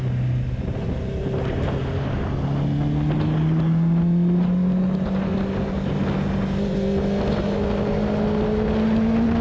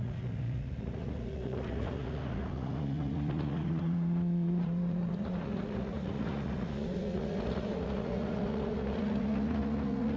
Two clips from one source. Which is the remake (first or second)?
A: second